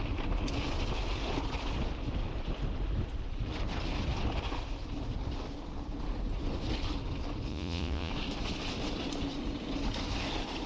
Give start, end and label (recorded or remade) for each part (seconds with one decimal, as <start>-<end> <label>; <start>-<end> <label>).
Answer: 0.0-7.5 recorded; 7.5-8.1 remade; 8.1-10.7 recorded